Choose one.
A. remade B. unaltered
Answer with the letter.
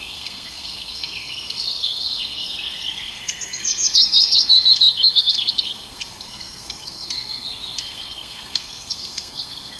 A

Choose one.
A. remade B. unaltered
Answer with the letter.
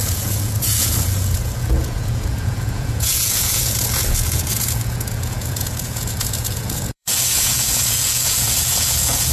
A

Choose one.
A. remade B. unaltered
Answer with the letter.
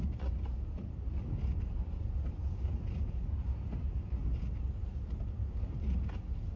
B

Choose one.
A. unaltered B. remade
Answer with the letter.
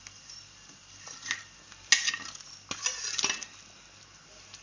A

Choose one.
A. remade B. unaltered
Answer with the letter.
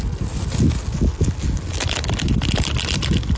B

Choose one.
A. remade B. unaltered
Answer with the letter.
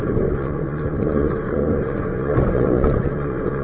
A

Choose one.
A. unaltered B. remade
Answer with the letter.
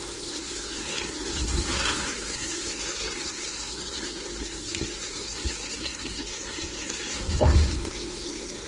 B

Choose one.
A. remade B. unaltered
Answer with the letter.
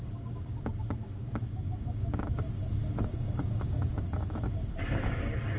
A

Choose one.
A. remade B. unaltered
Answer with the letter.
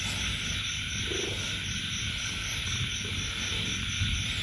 B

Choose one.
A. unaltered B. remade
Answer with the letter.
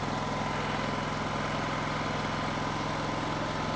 A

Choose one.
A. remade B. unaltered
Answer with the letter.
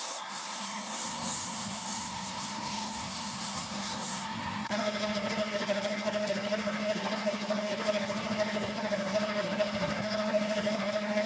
A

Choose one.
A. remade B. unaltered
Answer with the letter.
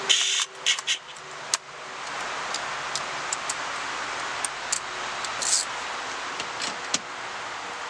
B